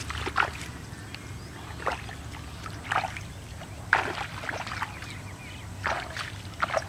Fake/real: real